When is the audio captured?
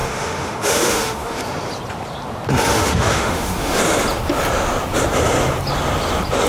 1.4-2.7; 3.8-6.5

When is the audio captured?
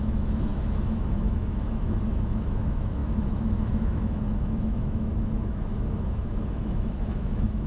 none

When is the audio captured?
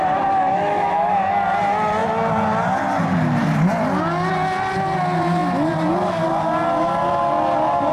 0.0-0.5; 1.1-7.9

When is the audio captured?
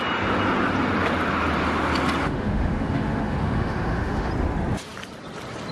0.0-2.2; 4.3-5.7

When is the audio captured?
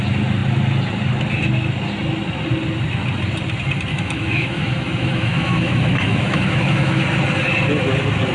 0.0-3.9; 7.0-8.3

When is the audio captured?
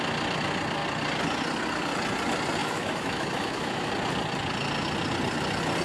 0.0-2.6; 3.9-5.8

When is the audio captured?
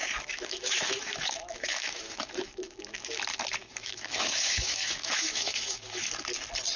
3.2-3.6; 6.1-6.8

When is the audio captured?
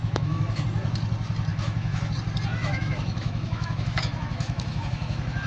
0.6-1.5; 2.1-2.6